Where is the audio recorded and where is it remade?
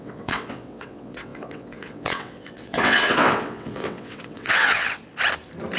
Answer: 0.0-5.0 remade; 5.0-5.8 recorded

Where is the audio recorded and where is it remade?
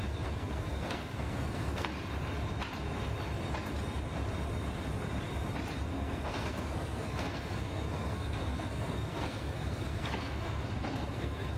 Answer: 0.0-1.9 remade; 1.9-5.9 recorded; 5.9-11.6 remade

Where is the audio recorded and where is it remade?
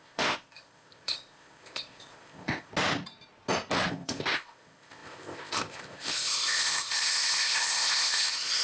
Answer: 0.0-2.7 remade; 2.7-3.9 recorded; 3.9-8.6 remade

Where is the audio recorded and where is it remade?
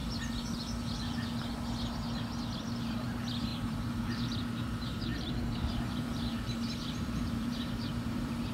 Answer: 0.0-2.6 recorded; 2.6-8.5 remade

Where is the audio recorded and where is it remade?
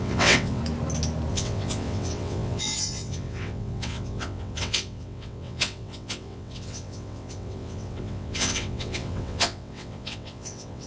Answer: 0.0-0.6 remade; 0.6-1.3 recorded; 1.3-10.9 remade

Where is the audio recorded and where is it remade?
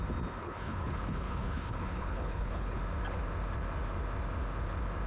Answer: 0.0-0.4 recorded; 0.4-2.8 remade; 2.8-5.1 recorded